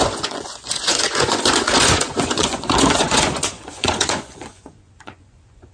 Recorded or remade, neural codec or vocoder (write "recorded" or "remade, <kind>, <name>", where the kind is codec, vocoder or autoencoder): remade, vocoder, Vocos